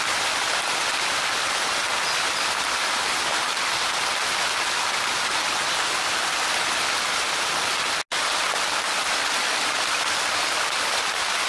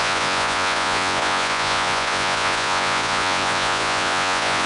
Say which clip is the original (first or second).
first